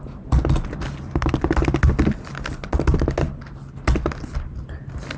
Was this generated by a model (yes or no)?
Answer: no